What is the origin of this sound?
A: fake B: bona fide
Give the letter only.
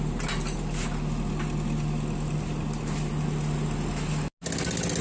B